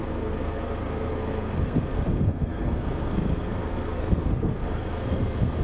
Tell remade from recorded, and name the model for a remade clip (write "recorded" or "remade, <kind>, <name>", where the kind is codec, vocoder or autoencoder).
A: remade, codec, SNAC